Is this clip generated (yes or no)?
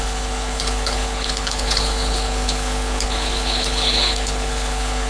yes